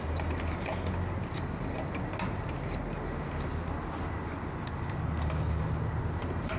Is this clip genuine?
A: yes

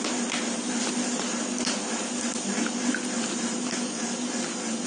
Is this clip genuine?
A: yes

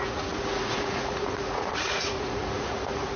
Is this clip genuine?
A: no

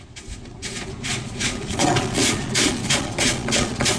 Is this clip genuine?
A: no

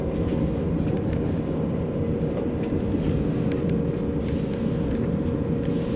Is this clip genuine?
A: yes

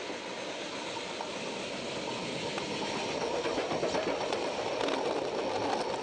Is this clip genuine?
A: yes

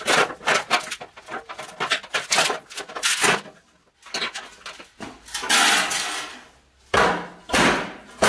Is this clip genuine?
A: yes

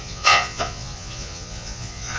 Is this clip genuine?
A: no